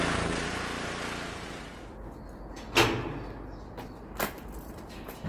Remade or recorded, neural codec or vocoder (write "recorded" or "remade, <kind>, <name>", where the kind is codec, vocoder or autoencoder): recorded